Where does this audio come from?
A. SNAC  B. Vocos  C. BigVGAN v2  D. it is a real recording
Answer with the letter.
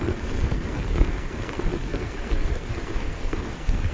A